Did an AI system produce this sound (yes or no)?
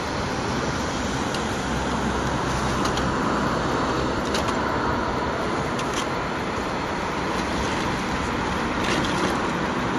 no